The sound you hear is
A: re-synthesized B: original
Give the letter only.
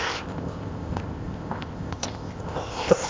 A